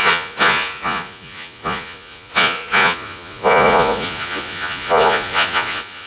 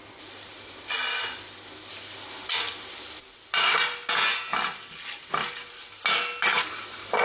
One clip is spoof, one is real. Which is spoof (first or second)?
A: first